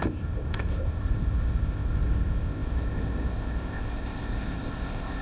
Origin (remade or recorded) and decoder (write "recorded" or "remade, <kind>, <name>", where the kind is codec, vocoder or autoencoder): remade, codec, ZipCodec